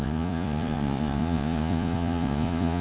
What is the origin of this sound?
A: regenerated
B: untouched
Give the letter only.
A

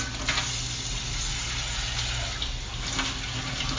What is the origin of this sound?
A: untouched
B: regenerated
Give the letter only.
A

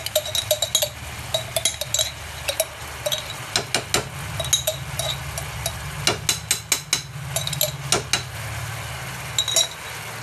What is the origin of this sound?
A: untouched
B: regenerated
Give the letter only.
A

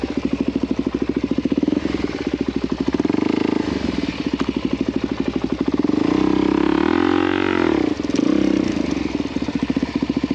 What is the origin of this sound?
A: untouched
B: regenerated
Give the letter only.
A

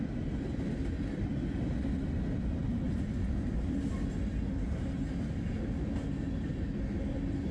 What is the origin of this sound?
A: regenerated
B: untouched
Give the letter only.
B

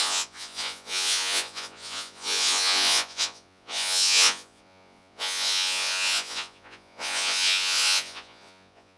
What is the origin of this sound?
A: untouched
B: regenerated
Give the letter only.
B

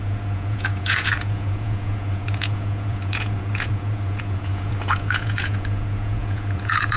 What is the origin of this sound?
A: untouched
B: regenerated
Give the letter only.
B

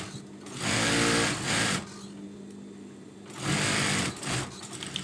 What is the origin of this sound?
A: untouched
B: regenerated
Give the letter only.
A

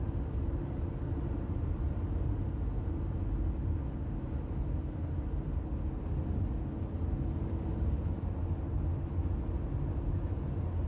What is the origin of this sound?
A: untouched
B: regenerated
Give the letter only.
A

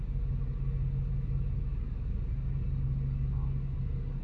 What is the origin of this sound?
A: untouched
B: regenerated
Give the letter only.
A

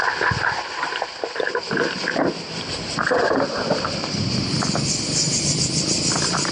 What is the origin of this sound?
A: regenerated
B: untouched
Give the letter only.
B